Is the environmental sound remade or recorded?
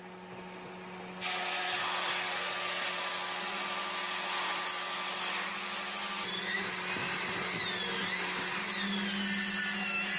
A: recorded